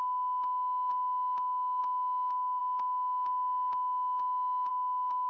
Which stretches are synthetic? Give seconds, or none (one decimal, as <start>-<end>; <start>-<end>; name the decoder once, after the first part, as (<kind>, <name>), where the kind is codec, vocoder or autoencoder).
0.0-5.3 (autoencoder, DAC-VAE)